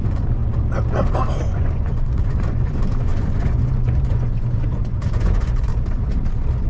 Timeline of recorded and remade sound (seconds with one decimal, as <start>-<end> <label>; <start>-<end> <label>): 0.0-0.4 remade; 0.4-1.5 recorded; 1.5-5.7 remade; 5.7-6.7 recorded